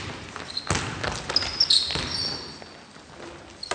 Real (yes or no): yes